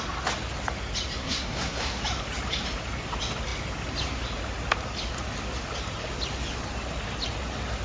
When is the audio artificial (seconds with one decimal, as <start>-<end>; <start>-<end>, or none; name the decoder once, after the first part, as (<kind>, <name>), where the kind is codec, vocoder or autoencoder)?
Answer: 1.2-2.0 (codec, SNAC)